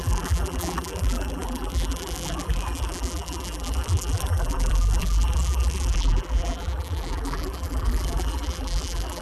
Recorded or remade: remade